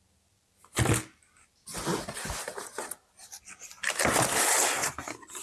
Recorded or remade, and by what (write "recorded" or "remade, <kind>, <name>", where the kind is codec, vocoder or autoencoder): recorded